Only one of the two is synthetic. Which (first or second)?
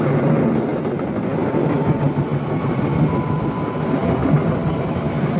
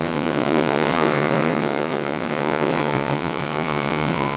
second